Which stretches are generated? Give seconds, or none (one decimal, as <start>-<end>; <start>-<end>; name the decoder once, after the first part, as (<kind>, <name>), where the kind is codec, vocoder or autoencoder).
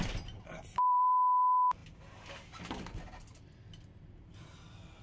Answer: 0.0-1.8 (vocoder, BigVGAN v2)